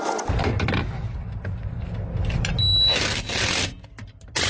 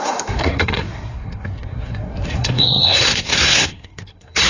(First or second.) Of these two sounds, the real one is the first